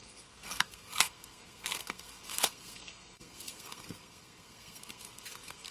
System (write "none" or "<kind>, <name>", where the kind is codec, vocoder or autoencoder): codec, SNAC